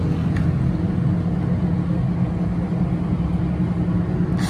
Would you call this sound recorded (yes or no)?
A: yes